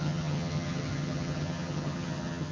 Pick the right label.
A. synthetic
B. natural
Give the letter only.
A